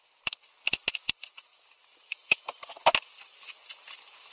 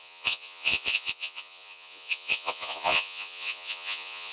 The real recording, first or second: first